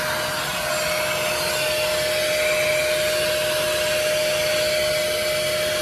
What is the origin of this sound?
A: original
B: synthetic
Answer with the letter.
A